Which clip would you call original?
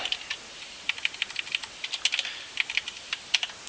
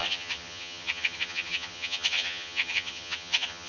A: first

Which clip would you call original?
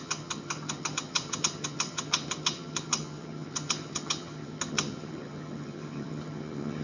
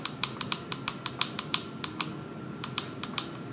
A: second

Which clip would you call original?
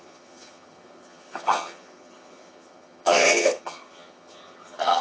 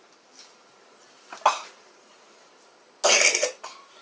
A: second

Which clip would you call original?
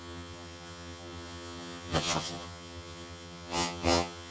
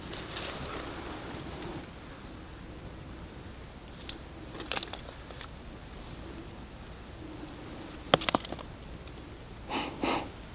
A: second